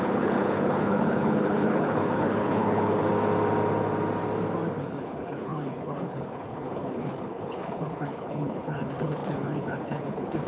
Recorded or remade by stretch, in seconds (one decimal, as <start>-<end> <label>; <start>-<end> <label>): 0.0-3.1 remade; 3.1-4.8 recorded; 4.8-10.5 remade

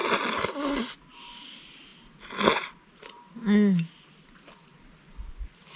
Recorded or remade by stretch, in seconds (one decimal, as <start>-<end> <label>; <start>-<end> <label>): 0.0-5.8 recorded

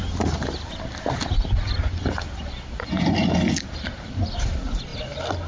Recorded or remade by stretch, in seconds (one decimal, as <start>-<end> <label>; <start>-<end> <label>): 0.0-5.5 recorded

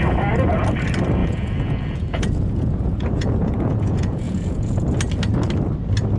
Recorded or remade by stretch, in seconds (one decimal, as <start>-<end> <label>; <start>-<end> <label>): 0.0-1.2 recorded; 1.2-4.9 remade; 4.9-6.2 recorded

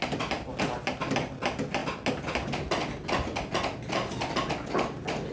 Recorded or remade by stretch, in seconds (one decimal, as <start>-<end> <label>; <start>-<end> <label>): 0.0-0.6 remade; 0.6-5.3 recorded

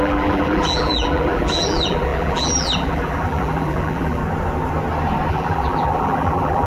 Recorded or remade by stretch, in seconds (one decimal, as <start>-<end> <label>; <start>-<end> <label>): 0.0-4.2 remade; 4.2-5.3 recorded; 5.3-6.7 remade